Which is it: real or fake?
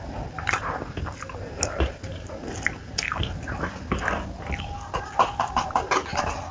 real